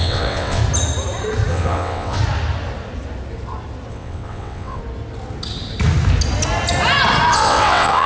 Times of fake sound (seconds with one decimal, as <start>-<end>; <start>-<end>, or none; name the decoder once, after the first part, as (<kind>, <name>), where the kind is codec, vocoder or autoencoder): 0.0-0.6 (vocoder, WaveNeXt); 1.5-2.2; 3.9-4.8; 7.3-8.1